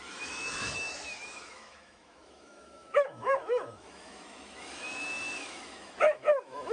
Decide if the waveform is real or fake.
fake